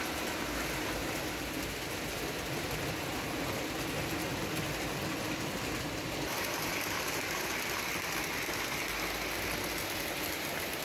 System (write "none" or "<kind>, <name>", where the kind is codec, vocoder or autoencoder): none